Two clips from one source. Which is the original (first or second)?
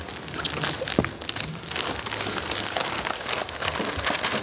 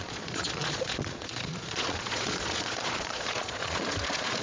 first